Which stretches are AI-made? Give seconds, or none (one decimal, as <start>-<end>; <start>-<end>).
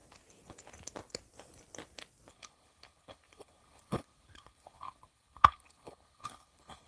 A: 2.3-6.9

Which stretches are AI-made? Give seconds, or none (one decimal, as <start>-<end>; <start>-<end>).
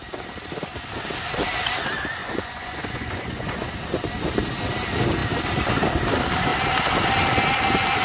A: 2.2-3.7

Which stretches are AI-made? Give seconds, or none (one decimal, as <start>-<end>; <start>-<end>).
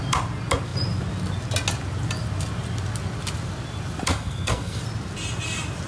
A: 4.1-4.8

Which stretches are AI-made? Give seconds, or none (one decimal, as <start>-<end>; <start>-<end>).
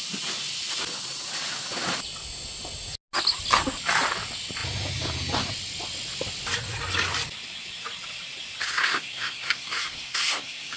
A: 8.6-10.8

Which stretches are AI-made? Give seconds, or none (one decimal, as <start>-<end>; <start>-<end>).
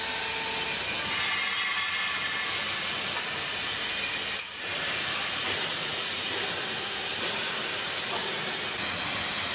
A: 5.7-6.3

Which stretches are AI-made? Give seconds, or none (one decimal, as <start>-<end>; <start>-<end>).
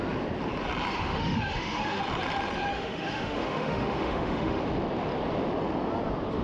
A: 0.9-2.0; 2.7-4.6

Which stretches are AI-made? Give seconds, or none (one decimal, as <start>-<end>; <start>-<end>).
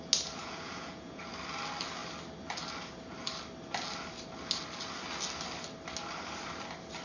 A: 0.4-1.2